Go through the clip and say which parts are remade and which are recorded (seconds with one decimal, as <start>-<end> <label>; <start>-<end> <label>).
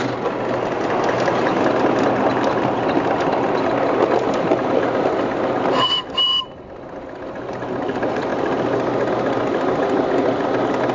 0.0-10.9 recorded